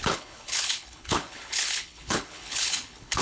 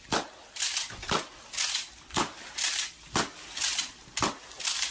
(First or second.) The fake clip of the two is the first